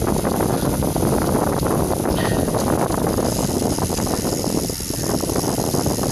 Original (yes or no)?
yes